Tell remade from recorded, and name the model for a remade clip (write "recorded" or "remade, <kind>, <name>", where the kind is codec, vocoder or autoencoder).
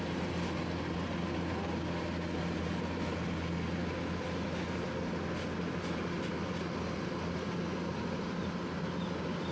recorded